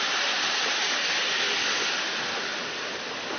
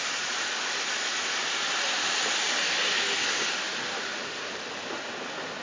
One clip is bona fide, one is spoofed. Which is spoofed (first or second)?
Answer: first